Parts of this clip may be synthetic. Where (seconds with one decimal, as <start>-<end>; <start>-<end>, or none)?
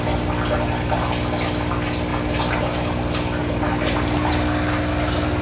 3.4-4.3